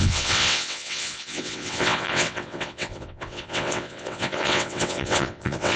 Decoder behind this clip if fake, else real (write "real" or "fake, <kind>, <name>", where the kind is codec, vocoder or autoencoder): fake, vocoder, WaveNeXt